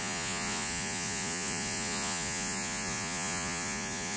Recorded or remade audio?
remade